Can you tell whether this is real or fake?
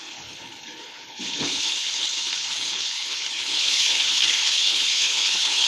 fake